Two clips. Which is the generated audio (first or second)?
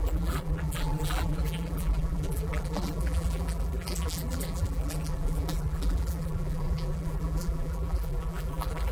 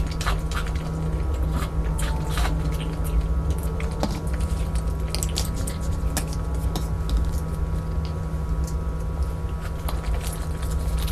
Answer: first